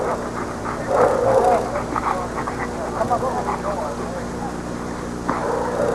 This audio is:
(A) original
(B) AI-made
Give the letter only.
A